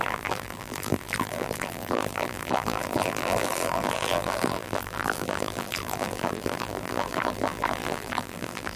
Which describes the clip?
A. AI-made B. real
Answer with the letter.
A